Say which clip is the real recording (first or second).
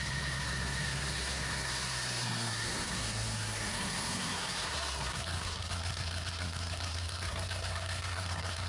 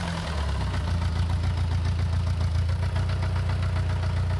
second